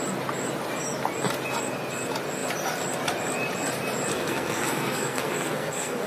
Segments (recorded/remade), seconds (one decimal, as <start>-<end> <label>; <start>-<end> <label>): 0.0-4.1 recorded; 4.1-6.1 remade